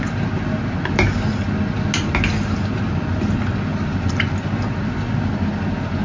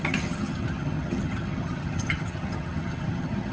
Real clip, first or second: first